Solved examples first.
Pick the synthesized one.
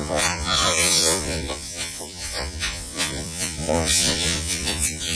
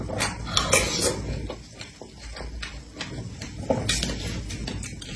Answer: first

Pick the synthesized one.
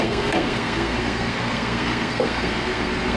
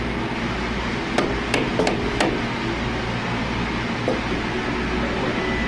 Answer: first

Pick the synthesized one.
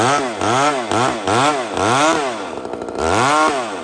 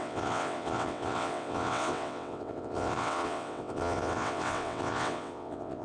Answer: second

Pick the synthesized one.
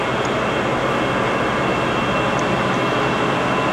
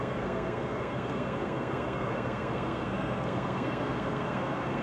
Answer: second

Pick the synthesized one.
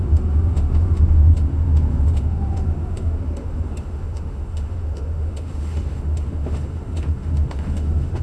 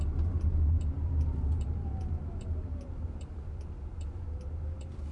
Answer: first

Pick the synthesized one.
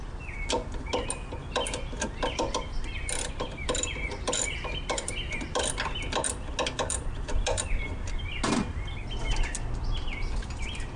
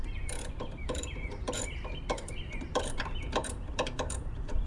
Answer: second